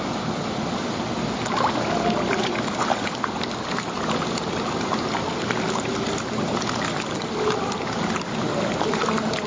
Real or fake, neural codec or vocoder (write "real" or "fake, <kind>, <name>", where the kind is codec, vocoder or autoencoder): real